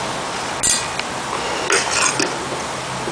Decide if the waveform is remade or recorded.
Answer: recorded